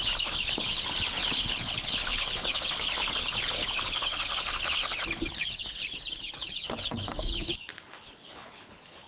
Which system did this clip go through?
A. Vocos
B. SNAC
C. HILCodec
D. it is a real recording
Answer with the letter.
C